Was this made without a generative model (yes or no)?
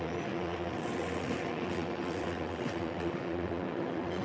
no